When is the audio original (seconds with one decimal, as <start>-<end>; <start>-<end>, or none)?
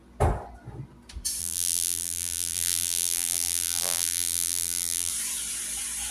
0.0-1.4; 5.1-6.1